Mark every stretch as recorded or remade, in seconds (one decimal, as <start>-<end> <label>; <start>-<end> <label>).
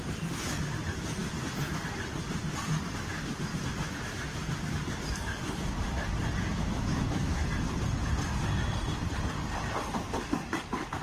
0.0-6.5 recorded; 6.5-7.4 remade; 7.4-11.0 recorded